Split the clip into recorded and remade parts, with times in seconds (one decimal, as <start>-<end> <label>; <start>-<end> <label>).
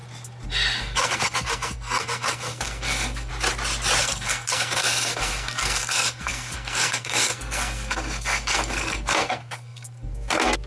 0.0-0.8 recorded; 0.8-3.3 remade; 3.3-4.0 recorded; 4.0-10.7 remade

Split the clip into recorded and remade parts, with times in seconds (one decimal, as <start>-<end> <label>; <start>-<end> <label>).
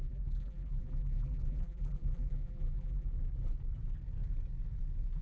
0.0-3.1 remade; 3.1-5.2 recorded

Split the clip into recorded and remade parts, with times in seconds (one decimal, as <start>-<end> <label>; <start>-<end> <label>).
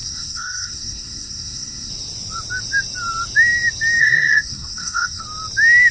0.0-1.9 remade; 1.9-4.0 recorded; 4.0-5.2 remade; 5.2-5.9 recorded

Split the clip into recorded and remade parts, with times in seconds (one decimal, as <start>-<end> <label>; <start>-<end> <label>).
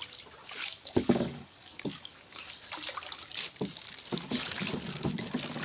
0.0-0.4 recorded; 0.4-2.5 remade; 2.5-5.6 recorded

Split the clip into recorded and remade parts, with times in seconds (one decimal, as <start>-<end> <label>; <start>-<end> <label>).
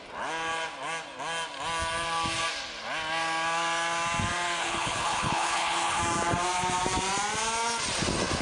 0.0-4.6 recorded; 4.6-6.0 remade; 6.0-8.4 recorded